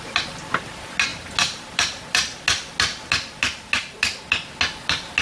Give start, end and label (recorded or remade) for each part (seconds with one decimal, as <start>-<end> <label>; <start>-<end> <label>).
0.0-5.2 recorded